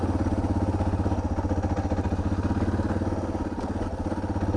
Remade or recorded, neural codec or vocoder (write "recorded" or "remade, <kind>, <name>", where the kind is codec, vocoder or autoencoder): recorded